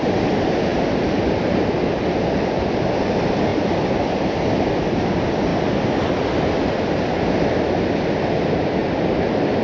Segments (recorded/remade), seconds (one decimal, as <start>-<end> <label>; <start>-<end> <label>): 0.0-3.5 remade; 3.5-4.7 recorded; 4.7-5.5 remade; 5.5-8.0 recorded; 8.0-9.6 remade